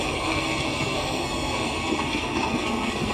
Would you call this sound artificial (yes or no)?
yes